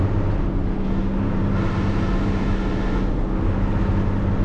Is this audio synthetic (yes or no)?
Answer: no